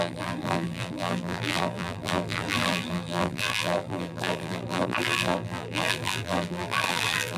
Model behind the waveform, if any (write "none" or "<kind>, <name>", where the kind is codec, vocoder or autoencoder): vocoder, BigVGAN v2